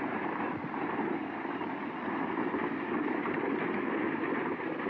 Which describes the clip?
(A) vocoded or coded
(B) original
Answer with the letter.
B